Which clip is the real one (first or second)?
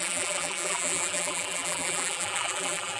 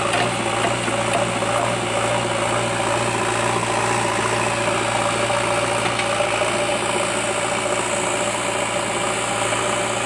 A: second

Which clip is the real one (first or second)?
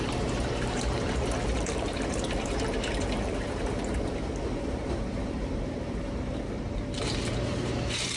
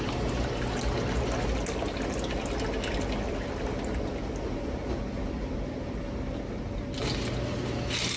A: second